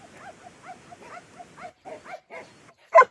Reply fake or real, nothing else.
real